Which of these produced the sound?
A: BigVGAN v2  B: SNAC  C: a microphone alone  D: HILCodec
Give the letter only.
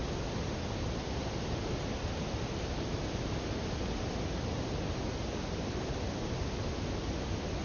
C